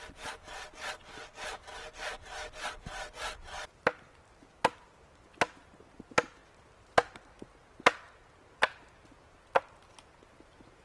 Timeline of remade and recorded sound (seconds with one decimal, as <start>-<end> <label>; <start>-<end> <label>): 0.0-10.8 recorded